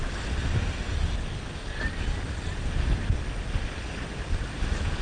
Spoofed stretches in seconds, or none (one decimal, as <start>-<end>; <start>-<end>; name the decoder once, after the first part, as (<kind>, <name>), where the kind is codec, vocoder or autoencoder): none